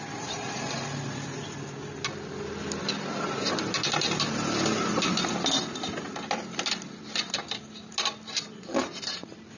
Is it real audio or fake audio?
real